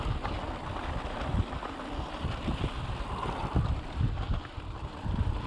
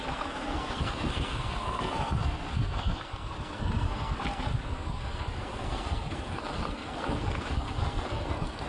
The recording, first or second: first